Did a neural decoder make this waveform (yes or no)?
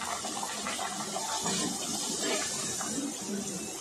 no